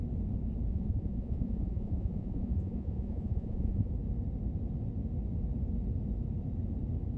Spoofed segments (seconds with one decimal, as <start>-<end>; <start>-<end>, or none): 0.7-3.9